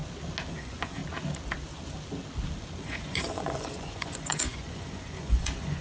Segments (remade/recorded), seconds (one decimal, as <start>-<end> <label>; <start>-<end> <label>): 0.0-0.5 recorded; 0.5-1.0 remade; 1.0-2.8 recorded; 2.8-5.8 remade